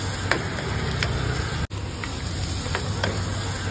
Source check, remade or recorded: recorded